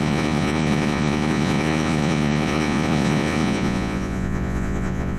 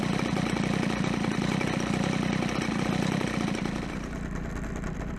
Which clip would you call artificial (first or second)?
first